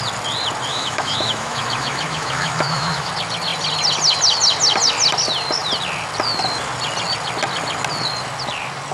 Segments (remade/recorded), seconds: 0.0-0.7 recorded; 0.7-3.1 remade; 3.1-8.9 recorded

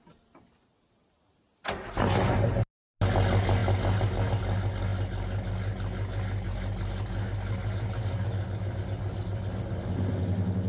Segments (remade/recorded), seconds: 0.0-10.7 recorded